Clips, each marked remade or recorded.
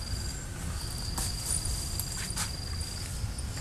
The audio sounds recorded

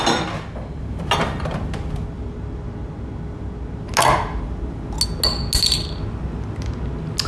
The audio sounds recorded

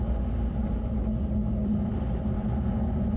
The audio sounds recorded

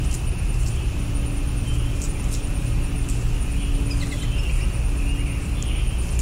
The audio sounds recorded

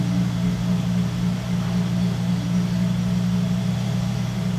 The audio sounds recorded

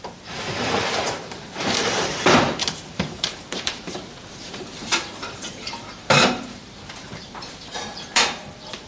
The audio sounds remade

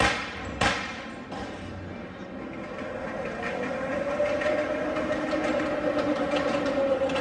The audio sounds recorded